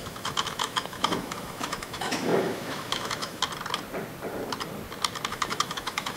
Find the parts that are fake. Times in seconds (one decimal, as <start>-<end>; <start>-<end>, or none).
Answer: 0.0-3.4; 5.3-6.2

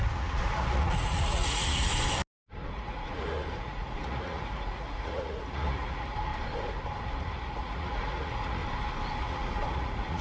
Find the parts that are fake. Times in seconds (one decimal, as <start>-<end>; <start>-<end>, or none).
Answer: 0.0-1.9; 2.7-6.3; 7.2-8.6; 9.2-10.2

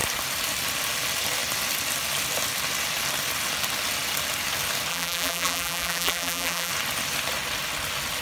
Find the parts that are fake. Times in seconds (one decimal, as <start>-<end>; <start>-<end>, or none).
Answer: 4.9-6.7